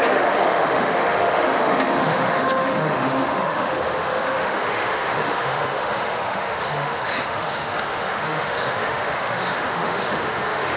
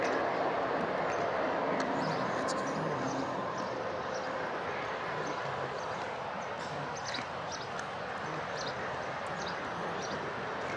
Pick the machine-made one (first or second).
first